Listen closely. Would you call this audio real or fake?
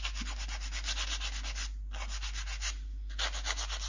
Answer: real